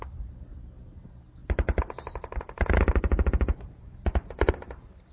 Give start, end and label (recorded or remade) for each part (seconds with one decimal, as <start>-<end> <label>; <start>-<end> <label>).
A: 0.0-1.4 recorded; 1.4-4.5 remade; 4.5-5.1 recorded